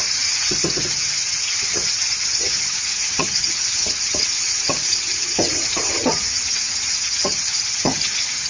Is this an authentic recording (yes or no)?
no